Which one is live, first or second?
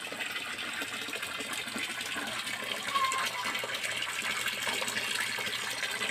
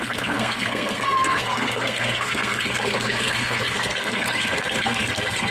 first